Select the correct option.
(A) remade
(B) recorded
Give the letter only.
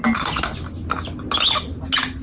B